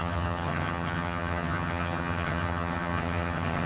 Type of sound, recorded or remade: remade